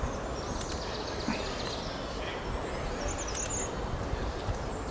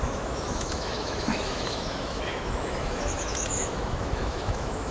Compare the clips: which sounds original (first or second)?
first